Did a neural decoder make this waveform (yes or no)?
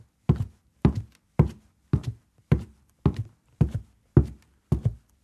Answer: no